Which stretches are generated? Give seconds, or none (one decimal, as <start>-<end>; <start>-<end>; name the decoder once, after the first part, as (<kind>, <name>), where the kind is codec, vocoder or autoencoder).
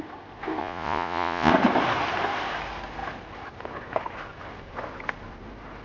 0.6-1.5 (vocoder, Vocos)